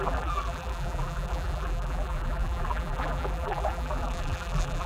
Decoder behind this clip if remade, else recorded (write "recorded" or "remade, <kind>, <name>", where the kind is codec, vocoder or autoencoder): remade, vocoder, BigVGAN v2